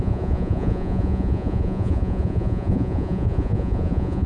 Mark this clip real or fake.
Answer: fake